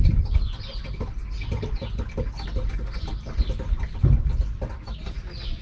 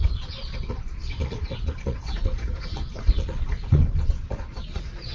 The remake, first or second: second